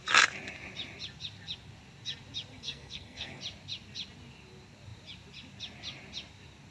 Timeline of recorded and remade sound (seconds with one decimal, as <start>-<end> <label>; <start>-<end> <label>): 0.0-2.5 recorded; 2.5-3.4 remade; 3.4-6.7 recorded